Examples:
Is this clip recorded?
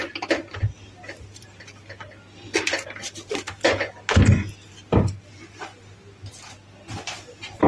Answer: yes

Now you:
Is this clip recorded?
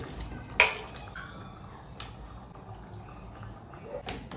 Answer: yes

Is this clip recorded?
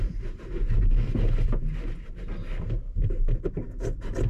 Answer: yes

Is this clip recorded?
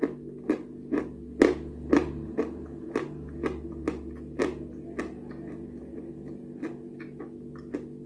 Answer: yes